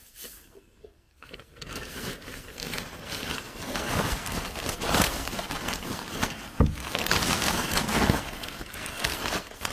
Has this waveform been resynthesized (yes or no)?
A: yes